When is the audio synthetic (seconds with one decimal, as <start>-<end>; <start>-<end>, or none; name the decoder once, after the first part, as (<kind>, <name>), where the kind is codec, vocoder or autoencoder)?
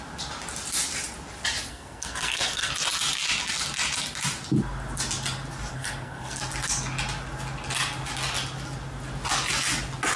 1.7-2.7 (codec, SNAC); 5.7-6.4